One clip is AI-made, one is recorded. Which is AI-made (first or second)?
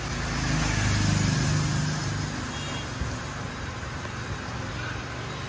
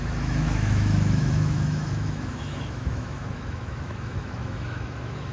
second